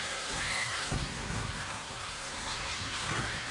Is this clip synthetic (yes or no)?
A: yes